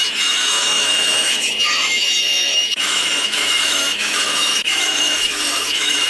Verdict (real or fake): fake